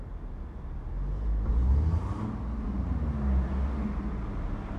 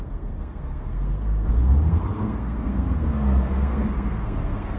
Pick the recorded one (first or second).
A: first